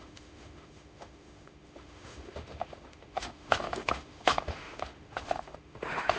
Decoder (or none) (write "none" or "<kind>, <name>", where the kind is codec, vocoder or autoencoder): autoencoder, DAC-VAE